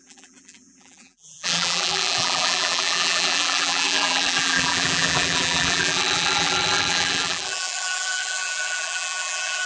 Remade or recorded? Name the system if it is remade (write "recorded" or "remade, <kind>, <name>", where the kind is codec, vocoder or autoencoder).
remade, vocoder, BigVGAN v2